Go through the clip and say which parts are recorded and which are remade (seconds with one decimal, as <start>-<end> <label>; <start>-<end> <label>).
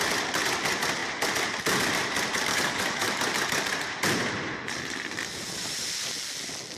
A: 0.0-2.5 recorded; 2.5-3.2 remade; 3.2-6.8 recorded